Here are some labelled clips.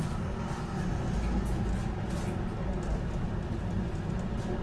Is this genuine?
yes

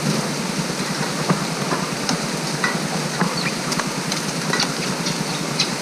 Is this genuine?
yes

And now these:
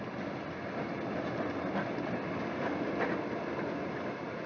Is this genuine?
yes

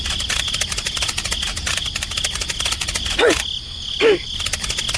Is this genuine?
yes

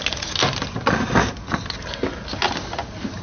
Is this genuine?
yes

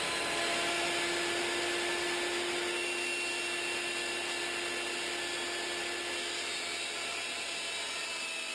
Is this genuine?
yes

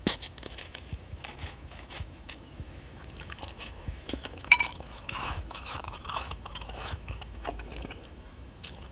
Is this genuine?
no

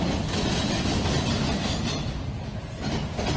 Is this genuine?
yes